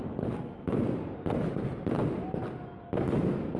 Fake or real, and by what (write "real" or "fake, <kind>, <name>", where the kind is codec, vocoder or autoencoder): real